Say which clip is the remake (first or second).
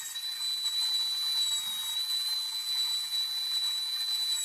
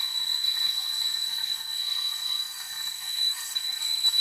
second